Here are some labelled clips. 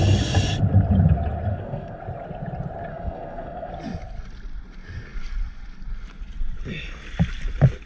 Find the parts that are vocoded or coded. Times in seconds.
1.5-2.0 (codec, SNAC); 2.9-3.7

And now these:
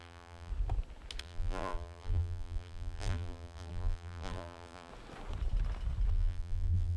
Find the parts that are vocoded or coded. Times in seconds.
0.0-0.5 (vocoder, BigVGAN v2); 1.2-4.9; 6.1-7.0

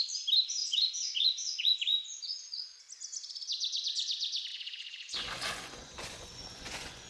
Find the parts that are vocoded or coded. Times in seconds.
0.6-2.8 (vocoder, Vocos); 4.5-7.1

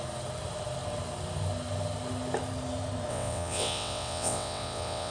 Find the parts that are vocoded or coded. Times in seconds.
3.1-5.1 (vocoder, WaveNeXt)

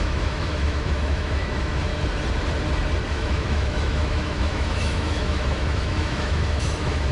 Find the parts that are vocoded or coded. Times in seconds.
0.0-1.9 (autoencoder, DAC-VAE); 3.1-7.1

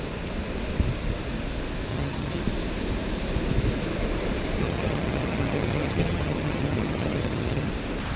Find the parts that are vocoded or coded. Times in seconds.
1.9-2.4 (vocoder, HiFi-GAN); 4.6-7.7